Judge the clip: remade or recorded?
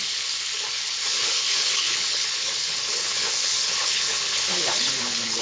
remade